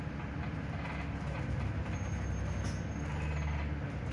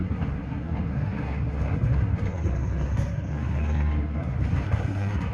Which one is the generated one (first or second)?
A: second